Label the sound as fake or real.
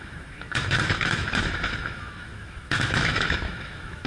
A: fake